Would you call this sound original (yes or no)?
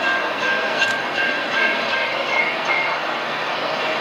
no